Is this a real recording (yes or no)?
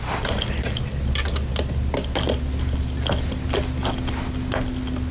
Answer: yes